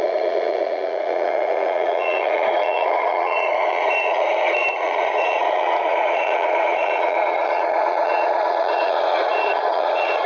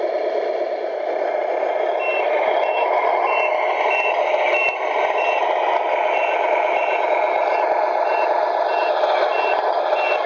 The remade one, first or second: first